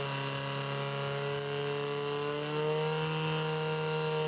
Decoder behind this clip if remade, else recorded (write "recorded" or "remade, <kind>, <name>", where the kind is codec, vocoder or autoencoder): recorded